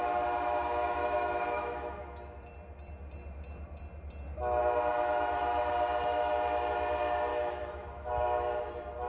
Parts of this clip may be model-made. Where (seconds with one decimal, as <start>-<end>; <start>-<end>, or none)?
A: 1.0-2.4; 4.9-5.7; 7.3-8.1